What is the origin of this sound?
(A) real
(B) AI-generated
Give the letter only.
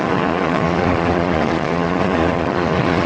B